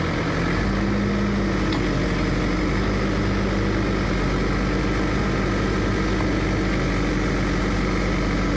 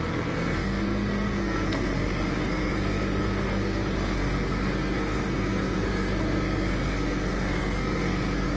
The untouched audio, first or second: first